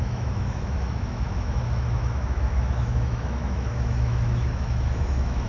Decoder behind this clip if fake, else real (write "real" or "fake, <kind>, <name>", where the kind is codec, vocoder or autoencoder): fake, autoencoder, DAC-VAE